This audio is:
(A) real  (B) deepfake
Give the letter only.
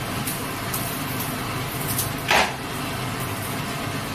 A